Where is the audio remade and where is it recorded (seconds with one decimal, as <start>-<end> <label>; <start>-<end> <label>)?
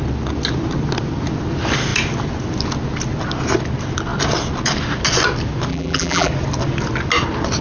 0.0-5.7 recorded; 5.7-6.3 remade; 6.3-7.6 recorded